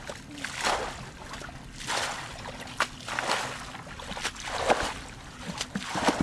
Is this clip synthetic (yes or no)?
no